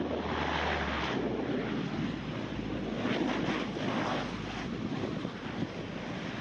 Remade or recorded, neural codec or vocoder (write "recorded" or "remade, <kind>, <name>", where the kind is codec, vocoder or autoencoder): recorded